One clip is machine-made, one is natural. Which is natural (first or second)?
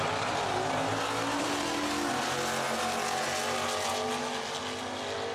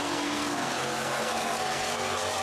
first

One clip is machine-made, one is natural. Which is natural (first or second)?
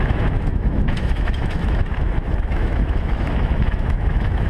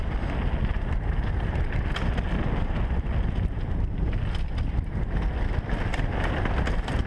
second